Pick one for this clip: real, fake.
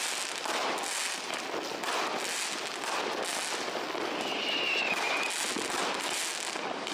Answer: real